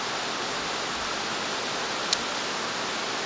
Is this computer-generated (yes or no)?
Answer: no